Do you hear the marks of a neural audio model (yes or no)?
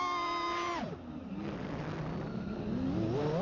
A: no